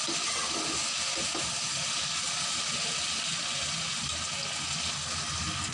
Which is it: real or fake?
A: real